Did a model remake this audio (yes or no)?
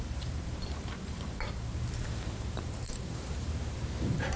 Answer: yes